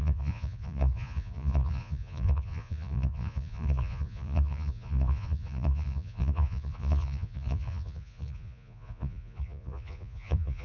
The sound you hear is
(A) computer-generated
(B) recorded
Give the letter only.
A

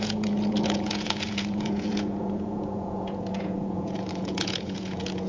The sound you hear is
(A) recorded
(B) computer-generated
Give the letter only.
B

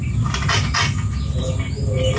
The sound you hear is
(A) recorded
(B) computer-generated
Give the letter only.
A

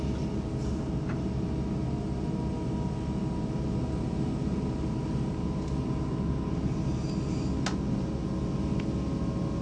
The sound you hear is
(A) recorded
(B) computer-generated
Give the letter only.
A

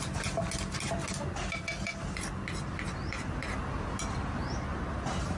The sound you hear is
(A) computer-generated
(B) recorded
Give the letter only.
B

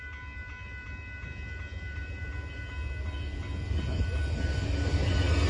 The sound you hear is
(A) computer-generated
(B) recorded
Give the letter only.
B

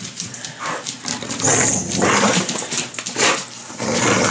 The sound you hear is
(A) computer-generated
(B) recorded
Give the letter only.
B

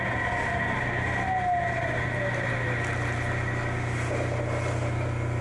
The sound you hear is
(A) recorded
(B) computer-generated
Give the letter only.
A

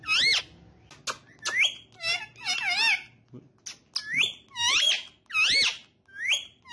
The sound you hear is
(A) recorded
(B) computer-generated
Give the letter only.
A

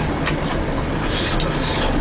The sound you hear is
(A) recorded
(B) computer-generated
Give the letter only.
A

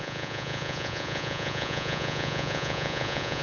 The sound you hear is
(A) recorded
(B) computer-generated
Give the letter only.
B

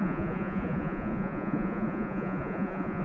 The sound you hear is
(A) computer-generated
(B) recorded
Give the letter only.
A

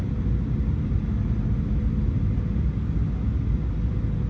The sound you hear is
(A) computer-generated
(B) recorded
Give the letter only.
B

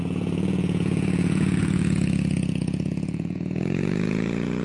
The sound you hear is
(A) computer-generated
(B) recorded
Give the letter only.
A